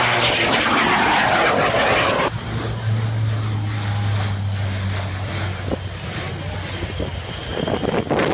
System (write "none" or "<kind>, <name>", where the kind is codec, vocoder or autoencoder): none